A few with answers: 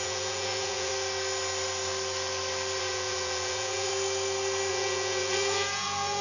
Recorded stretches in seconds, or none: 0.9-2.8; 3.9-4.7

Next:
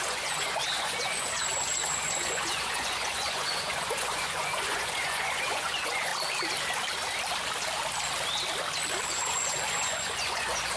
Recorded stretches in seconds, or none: 6.1-9.1

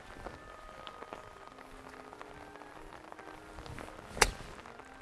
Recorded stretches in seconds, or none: 0.0-5.0

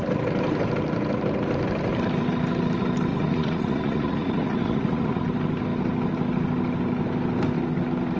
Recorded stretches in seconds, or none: 0.0-3.1; 5.2-8.2